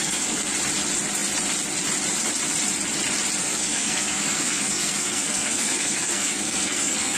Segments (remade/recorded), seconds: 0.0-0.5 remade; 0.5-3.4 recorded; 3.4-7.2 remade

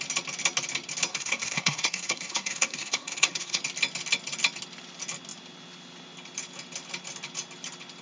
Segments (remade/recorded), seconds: 0.0-1.1 recorded; 1.1-3.6 remade; 3.6-8.0 recorded

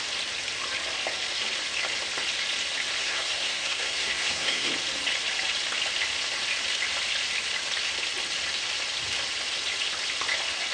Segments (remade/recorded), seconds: 0.0-3.0 recorded; 3.0-4.7 remade; 4.7-10.7 recorded

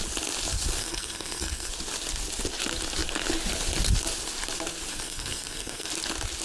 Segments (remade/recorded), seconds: 0.0-0.8 recorded; 0.8-1.7 remade; 1.7-4.9 recorded; 4.9-5.9 remade; 5.9-6.4 recorded